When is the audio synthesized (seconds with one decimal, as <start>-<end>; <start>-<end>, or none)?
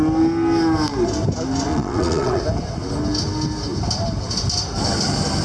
1.7-2.4